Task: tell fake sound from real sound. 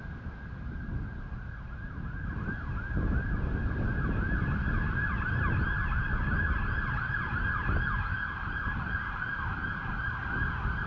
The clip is real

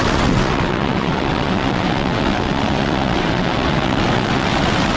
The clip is fake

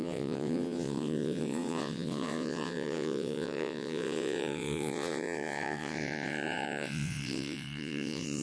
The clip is fake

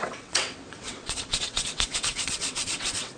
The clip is fake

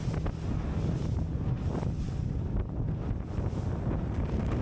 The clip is real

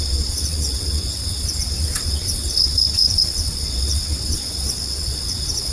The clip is fake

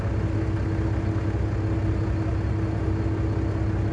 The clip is real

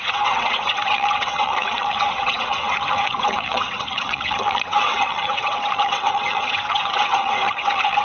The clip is fake